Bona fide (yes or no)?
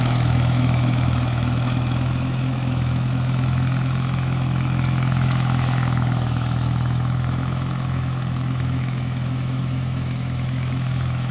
no